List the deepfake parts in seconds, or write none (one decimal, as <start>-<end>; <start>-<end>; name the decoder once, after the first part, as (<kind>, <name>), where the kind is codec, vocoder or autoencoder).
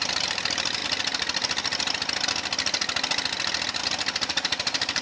0.0-0.8 (vocoder, BigVGAN v2); 3.8-5.0